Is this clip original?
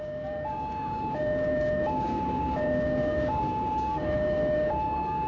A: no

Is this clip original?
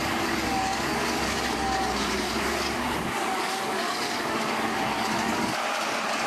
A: no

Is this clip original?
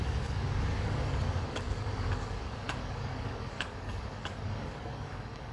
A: no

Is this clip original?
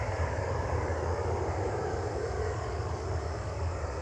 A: no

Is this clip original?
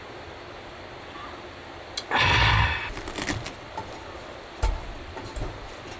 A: yes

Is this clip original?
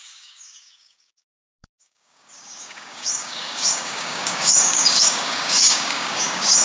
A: no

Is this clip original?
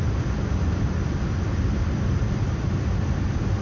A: yes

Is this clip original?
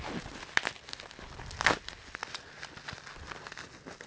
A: yes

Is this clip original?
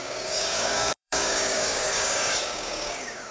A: no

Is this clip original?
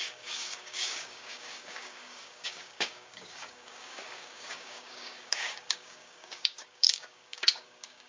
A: no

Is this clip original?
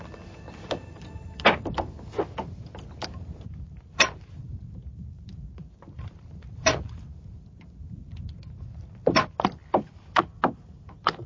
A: yes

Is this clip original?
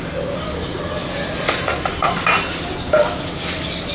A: yes